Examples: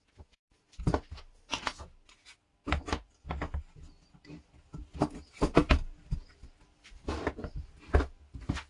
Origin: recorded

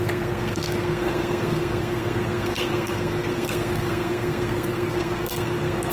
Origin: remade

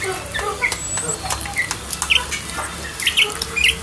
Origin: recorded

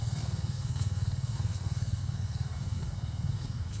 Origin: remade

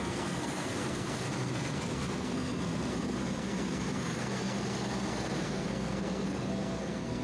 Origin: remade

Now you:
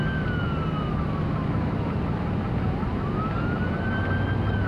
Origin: recorded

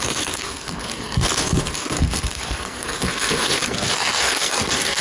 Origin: remade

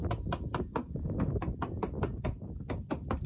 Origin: recorded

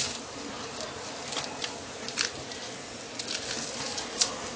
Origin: recorded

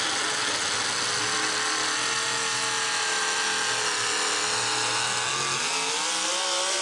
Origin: recorded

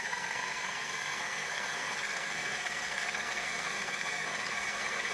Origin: remade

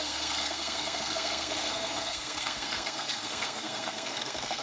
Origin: remade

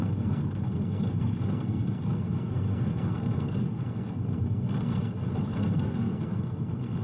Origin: remade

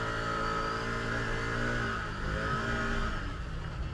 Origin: recorded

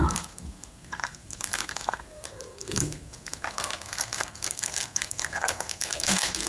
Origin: remade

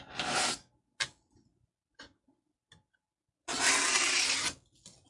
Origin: recorded